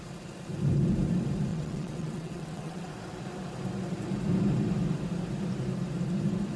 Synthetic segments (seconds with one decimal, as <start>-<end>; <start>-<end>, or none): 1.5-2.9